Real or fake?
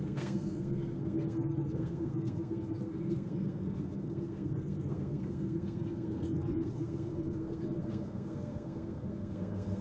fake